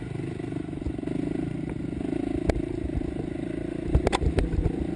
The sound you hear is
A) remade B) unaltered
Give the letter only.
B